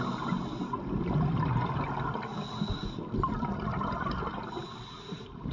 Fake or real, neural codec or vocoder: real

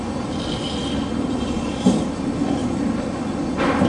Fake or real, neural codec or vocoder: real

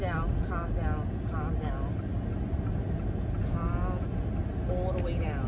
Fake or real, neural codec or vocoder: real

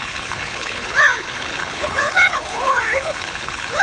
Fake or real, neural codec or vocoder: fake, codec, HILCodec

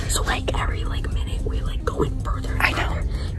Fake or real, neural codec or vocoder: real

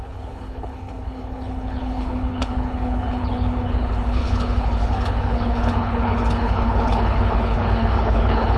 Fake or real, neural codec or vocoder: fake, codec, HILCodec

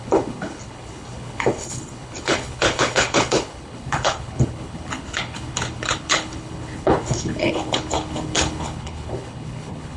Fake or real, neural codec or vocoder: fake, codec, HILCodec